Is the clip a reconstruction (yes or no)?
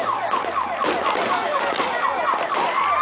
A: no